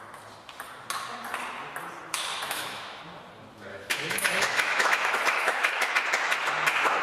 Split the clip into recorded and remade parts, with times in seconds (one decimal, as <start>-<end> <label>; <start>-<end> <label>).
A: 0.0-2.3 recorded; 2.3-3.0 remade; 3.0-3.7 recorded; 3.7-5.9 remade; 5.9-7.0 recorded

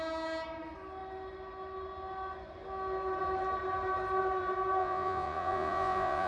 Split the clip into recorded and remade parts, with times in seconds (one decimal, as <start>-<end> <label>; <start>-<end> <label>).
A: 0.0-4.8 recorded; 4.8-6.3 remade